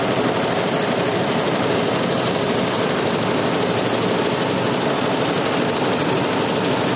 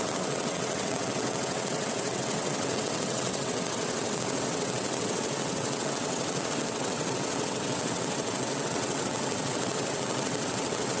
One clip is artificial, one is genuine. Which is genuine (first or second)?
first